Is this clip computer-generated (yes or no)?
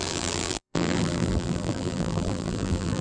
yes